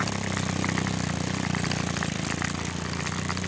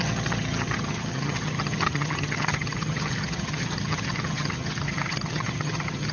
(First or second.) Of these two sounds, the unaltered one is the first